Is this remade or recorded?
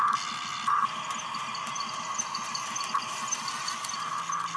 recorded